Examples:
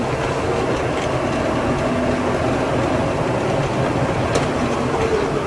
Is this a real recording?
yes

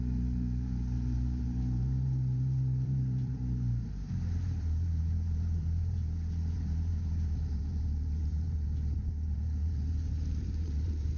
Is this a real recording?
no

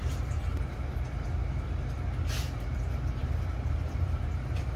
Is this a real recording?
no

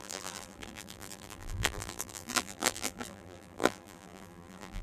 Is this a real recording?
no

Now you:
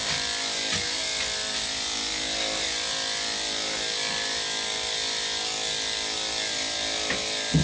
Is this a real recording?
yes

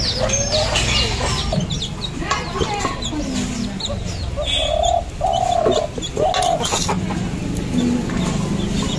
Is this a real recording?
yes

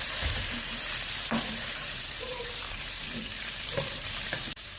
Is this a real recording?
no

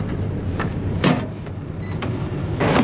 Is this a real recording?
no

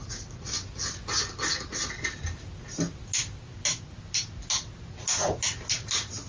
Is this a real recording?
yes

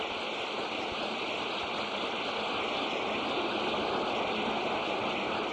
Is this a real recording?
yes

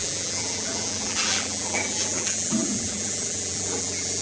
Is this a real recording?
no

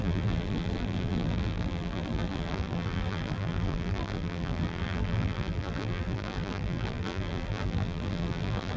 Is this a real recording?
no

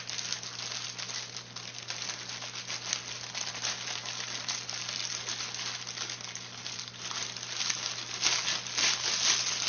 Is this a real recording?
yes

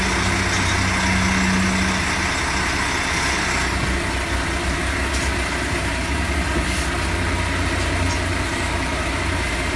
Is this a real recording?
yes